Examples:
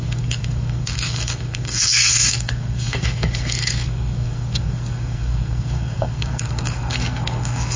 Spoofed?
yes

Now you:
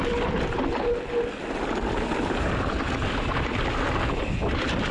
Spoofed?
no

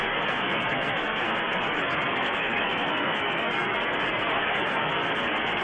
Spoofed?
yes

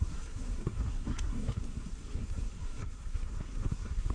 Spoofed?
yes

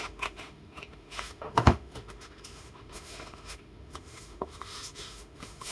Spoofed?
yes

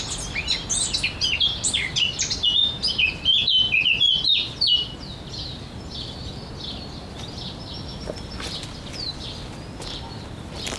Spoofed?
no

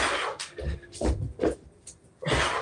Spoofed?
no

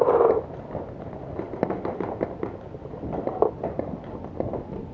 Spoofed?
no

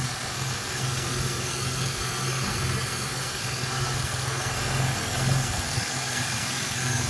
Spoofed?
yes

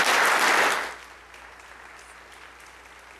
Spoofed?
no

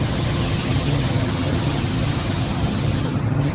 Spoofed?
yes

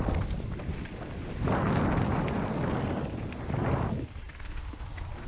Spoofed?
no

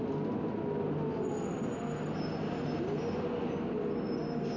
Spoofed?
no